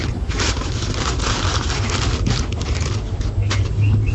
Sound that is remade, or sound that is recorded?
recorded